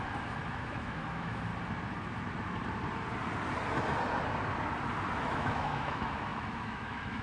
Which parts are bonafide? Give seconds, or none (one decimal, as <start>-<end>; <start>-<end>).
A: 1.5-5.2